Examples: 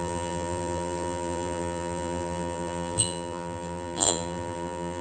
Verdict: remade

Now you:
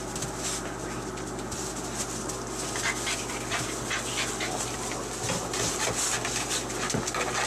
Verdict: recorded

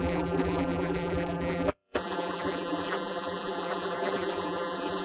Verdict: remade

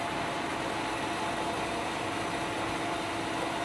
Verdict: recorded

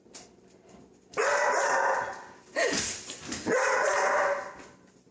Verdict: remade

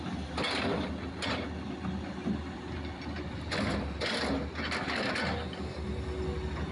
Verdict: recorded